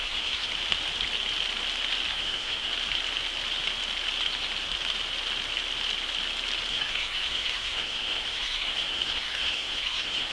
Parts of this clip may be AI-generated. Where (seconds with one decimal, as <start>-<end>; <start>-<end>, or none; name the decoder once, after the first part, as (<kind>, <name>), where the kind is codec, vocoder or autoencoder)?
0.0-0.5 (codec, SNAC); 2.1-2.7; 6.7-10.3